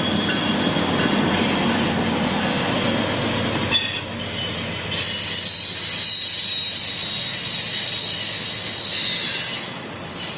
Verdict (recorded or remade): recorded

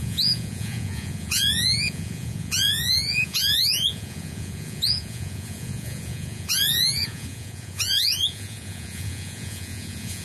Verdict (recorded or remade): remade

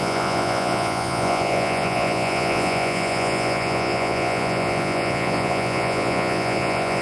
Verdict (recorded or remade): remade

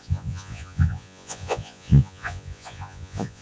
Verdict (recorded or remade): remade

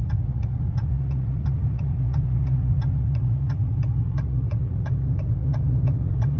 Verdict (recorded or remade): remade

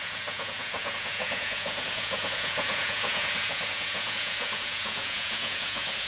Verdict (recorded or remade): remade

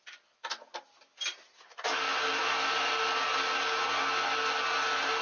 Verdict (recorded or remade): recorded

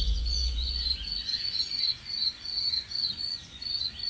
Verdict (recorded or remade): remade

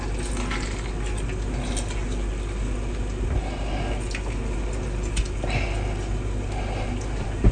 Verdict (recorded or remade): recorded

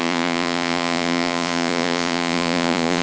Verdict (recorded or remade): remade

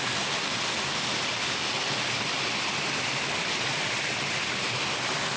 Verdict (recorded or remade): recorded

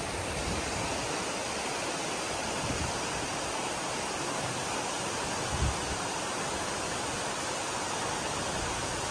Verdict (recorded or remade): recorded